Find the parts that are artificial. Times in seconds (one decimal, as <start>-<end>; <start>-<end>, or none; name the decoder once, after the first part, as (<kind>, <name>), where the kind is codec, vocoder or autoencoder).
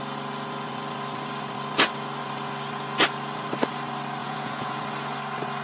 4.2-4.8 (vocoder, Vocos)